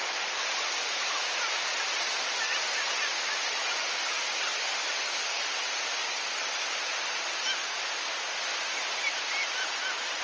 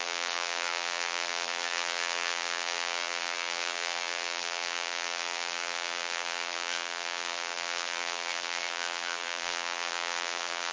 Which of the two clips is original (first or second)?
first